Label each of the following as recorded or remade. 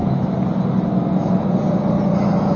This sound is recorded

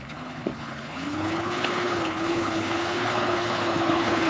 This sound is remade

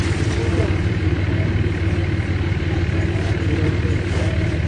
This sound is remade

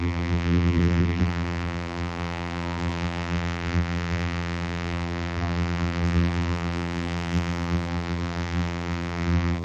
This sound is remade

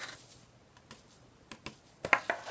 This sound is recorded